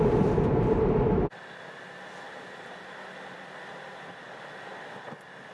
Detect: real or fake real